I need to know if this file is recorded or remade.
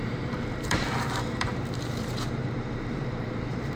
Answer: remade